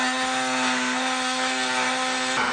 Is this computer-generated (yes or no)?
no